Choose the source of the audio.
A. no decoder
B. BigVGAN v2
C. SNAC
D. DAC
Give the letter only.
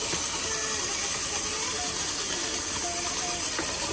A